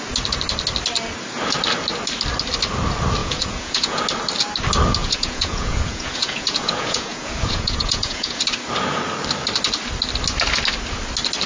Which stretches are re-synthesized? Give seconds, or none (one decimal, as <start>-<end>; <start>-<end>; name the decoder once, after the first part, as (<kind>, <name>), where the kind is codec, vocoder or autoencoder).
3.2-4.0 (vocoder, Vocos); 5.0-8.4